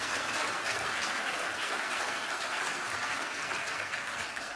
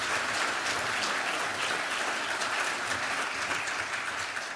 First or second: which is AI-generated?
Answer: first